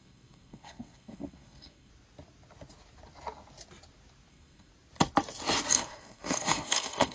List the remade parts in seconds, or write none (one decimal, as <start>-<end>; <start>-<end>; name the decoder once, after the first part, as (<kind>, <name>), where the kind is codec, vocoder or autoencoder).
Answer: 0.0-1.9 (codec, SNAC); 4.3-4.7; 5.7-7.1